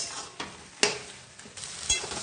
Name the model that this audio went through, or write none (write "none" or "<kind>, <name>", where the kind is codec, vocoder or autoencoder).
none